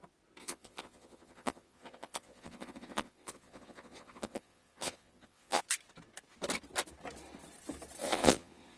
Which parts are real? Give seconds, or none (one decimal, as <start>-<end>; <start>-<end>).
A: 0.0-0.4; 5.6-8.0